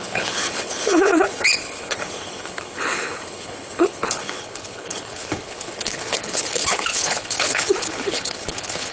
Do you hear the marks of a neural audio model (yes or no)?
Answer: yes